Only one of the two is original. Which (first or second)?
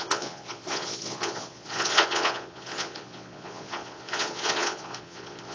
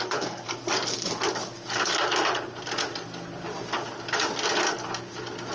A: second